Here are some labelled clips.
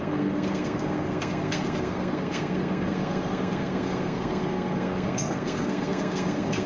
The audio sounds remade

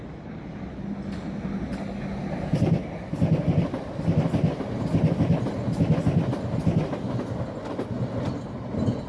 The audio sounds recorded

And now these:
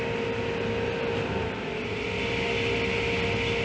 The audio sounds recorded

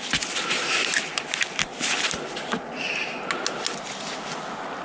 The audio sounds recorded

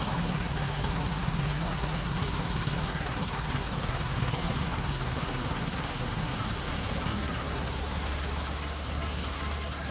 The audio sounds remade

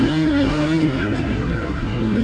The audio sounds remade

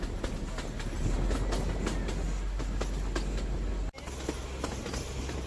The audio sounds recorded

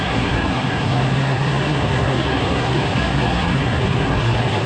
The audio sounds remade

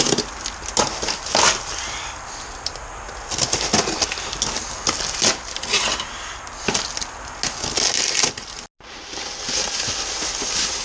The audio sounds recorded